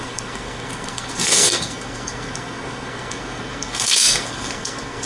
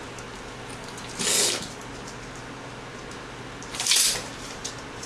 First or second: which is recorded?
second